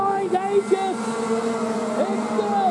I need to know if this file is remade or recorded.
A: recorded